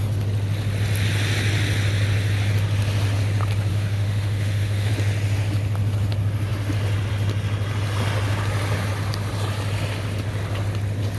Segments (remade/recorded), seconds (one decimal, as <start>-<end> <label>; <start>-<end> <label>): 0.0-3.7 recorded; 3.7-4.9 remade; 4.9-11.2 recorded